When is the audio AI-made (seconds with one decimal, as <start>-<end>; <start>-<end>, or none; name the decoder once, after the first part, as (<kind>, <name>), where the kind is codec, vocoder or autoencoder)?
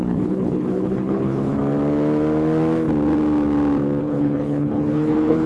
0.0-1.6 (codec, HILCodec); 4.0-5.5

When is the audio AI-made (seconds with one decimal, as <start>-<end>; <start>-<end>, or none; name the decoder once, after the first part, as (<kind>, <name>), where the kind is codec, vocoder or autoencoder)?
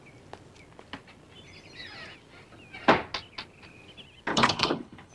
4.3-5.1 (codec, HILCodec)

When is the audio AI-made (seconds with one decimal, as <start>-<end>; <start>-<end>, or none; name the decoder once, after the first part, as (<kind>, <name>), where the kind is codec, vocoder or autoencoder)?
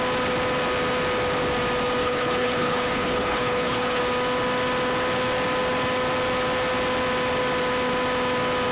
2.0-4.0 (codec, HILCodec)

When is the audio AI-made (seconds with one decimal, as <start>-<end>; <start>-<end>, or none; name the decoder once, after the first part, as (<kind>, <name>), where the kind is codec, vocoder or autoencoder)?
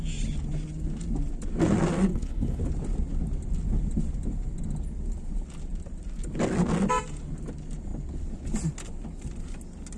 2.1-2.6 (codec, HILCodec)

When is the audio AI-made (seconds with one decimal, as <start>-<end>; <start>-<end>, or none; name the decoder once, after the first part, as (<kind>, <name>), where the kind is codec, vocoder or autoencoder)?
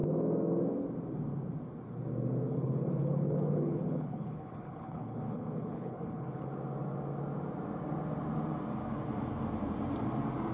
2.5-6.5 (codec, HILCodec)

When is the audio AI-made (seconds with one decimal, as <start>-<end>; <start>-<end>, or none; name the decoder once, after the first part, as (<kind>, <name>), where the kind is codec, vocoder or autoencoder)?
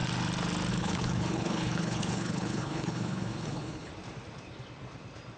0.7-3.9 (codec, HILCodec)